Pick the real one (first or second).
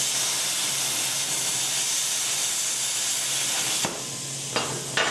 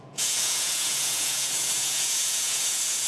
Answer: first